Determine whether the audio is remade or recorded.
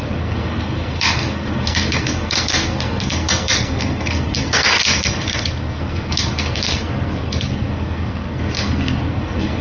remade